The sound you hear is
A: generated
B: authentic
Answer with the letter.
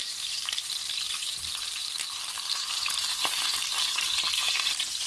A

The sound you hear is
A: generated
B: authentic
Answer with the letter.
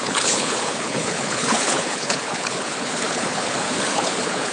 A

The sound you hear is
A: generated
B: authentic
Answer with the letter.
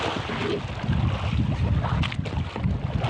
B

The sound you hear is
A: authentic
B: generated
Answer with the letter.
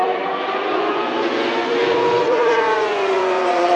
B